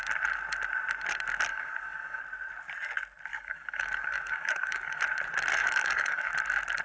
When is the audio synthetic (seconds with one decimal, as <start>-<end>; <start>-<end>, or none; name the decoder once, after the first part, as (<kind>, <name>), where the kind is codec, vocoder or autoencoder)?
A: 1.5-2.2 (codec, DAC); 3.3-5.0; 5.5-6.3